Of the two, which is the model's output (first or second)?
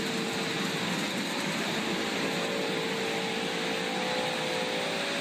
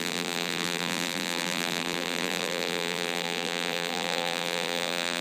second